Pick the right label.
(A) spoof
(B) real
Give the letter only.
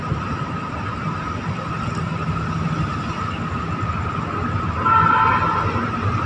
B